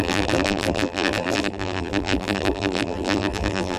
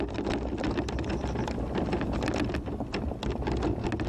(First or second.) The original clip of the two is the second